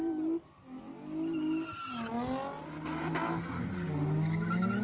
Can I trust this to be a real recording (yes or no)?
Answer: yes